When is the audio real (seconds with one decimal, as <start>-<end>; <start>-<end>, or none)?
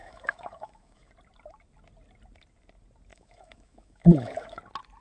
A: 1.1-3.1; 4.6-5.0